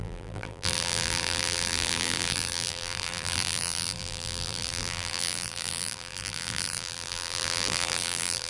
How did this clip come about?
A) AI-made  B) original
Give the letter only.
A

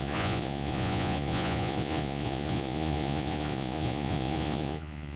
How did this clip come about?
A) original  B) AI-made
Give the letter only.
B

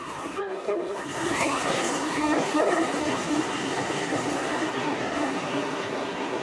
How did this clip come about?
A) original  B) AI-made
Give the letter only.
B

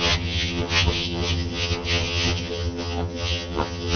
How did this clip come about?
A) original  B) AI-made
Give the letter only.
B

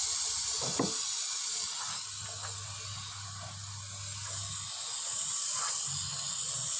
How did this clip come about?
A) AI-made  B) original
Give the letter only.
B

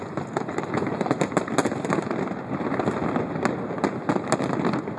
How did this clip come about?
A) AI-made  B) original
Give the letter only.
B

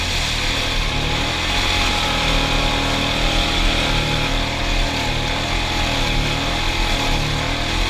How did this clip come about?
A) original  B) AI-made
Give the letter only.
A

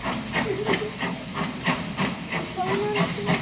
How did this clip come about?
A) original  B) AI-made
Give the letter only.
A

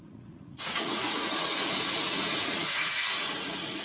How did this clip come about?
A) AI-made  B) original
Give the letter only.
A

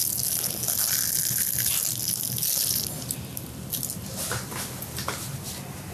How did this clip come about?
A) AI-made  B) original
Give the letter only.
B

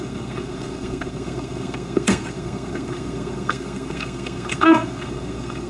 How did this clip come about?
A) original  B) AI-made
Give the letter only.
B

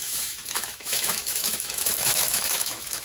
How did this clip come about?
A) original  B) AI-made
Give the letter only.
B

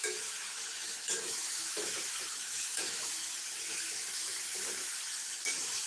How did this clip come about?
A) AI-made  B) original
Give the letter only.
A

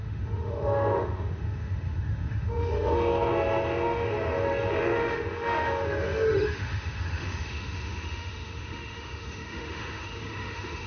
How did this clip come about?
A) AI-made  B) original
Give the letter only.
A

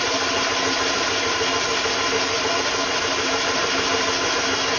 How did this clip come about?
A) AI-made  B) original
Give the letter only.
B